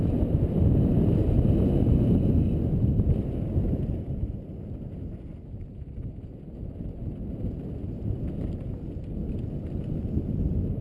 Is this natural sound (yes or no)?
yes